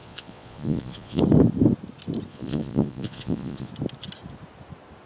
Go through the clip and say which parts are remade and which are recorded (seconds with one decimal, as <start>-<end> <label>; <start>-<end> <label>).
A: 0.0-1.2 remade; 1.2-2.3 recorded; 2.3-3.7 remade; 3.7-5.1 recorded